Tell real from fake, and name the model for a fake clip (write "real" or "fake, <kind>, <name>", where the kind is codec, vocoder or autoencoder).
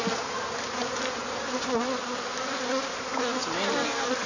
real